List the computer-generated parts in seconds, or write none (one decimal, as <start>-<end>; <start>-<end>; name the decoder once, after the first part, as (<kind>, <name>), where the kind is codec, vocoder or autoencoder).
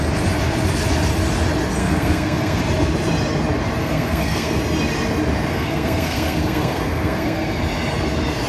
1.8-2.6 (codec, SNAC); 3.8-4.6; 5.5-7.6